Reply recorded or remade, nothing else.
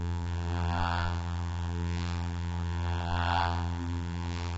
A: remade